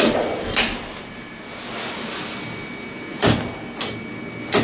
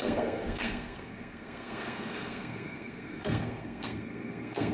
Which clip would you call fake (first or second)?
second